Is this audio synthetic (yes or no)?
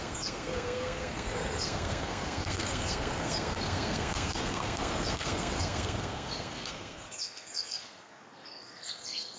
yes